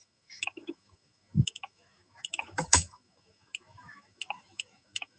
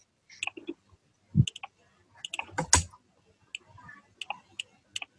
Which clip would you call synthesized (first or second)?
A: first